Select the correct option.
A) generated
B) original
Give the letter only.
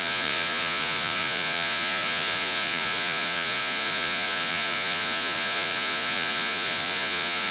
A